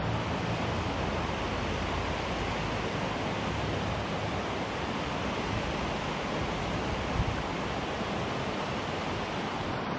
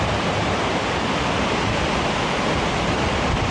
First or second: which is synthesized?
second